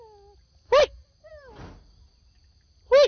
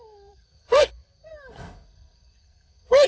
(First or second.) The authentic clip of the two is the first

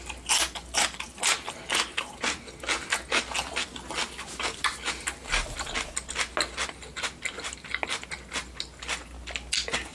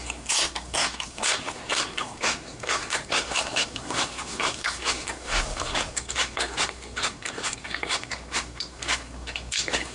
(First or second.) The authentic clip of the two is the first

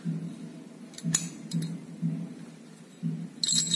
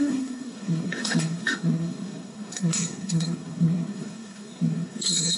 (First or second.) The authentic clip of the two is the first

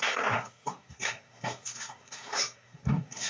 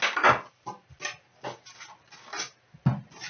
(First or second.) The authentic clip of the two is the second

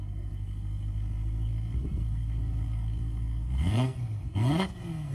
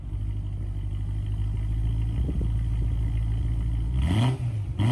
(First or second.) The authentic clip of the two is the second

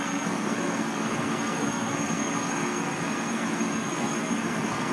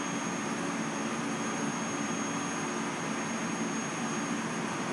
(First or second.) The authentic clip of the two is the second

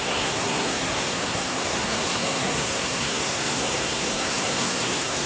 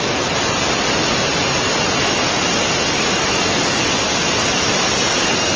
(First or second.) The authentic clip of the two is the second